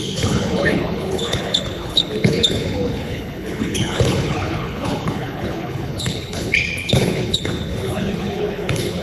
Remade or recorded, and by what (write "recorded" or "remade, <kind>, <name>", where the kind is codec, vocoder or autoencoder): remade, codec, HILCodec